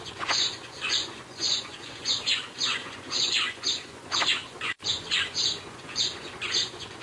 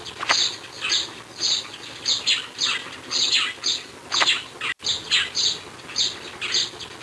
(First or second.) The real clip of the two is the second